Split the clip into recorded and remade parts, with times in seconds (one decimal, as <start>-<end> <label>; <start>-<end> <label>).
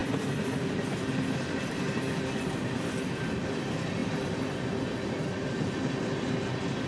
0.0-6.9 recorded